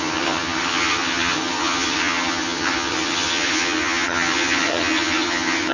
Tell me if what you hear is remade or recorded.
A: remade